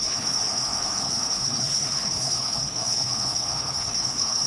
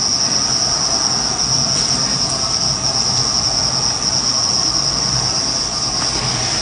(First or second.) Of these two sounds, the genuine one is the second